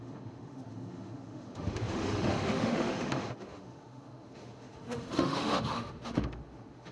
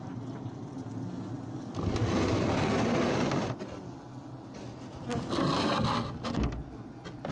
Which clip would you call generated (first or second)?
first